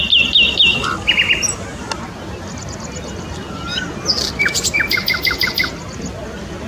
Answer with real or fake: real